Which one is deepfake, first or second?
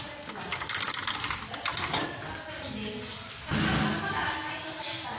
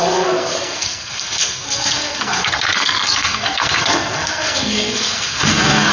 second